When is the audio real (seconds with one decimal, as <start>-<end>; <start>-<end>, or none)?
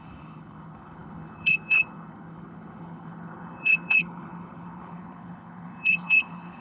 none